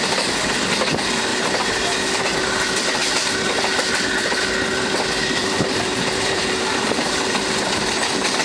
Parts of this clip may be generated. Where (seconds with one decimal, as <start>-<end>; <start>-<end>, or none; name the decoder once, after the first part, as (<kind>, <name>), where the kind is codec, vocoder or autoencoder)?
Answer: 1.3-2.2 (vocoder, BigVGAN v2); 3.0-4.0; 5.2-7.1